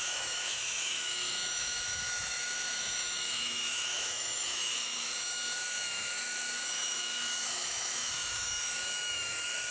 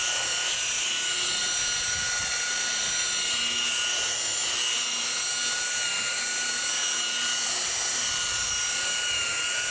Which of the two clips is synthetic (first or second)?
first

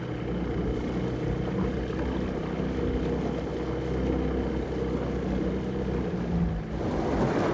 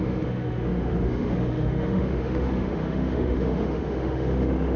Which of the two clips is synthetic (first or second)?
second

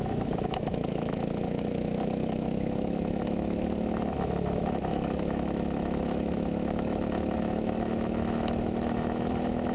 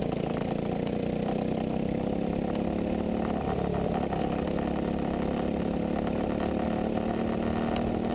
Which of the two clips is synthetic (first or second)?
first